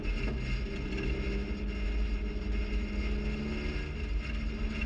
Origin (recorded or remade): recorded